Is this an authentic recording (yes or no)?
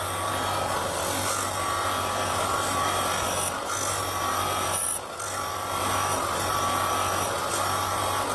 yes